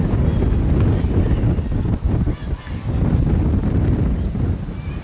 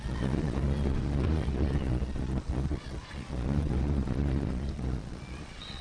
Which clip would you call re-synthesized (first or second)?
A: second